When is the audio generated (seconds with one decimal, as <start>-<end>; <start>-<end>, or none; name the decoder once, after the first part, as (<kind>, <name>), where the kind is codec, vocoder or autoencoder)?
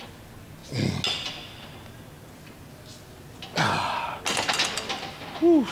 none